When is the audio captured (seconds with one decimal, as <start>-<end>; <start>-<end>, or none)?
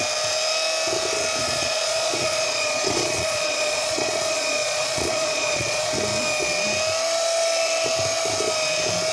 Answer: 0.0-1.4; 5.8-9.1